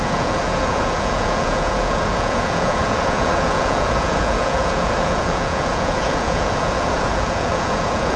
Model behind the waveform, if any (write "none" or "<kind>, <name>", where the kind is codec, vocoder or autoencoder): vocoder, Vocos